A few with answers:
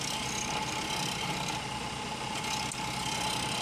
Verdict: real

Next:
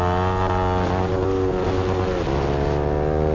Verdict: real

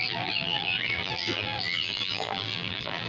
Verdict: fake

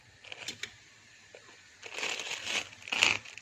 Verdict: real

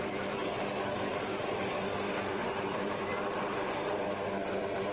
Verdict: fake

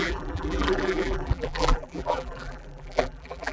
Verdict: fake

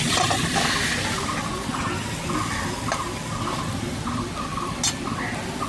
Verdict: real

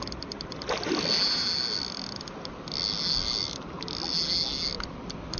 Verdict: real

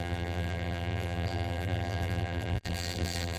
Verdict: fake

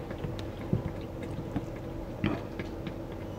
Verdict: real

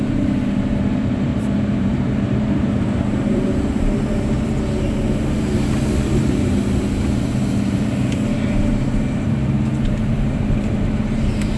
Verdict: fake